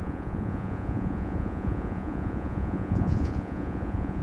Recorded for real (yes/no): no